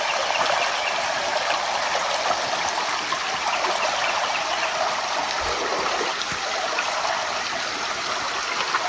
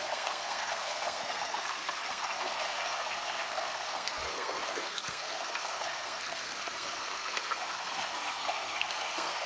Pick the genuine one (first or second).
first